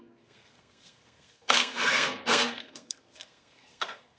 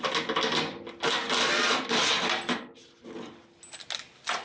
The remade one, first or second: first